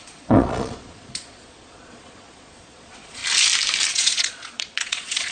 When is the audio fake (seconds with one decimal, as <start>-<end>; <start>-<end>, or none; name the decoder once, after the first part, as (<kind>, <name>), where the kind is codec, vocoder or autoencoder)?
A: 0.0-3.2 (vocoder, Vocos); 3.9-5.3